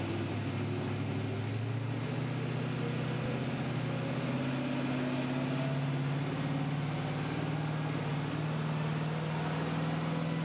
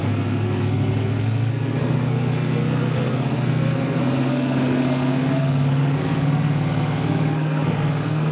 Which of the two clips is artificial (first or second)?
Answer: second